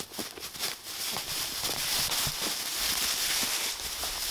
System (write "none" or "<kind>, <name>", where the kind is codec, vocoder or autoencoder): none